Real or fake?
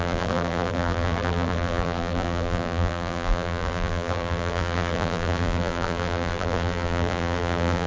fake